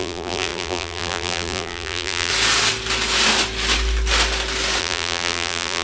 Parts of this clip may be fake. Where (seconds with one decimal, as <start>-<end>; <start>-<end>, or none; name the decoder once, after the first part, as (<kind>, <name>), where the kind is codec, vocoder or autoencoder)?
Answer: 0.0-2.3 (vocoder, BigVGAN v2); 4.8-5.8